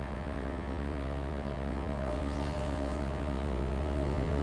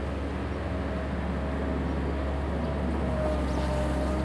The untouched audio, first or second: second